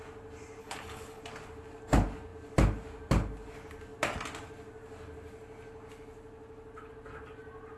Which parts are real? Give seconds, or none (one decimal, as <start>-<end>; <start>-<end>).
0.0-0.6; 1.2-7.8